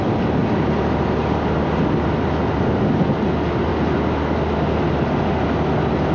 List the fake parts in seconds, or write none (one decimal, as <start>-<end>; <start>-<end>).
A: none